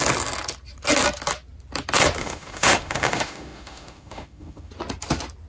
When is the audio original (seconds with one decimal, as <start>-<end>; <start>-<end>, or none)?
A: 0.0-2.2; 4.7-5.5